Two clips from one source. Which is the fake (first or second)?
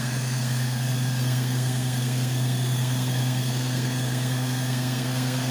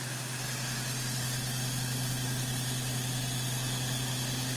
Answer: first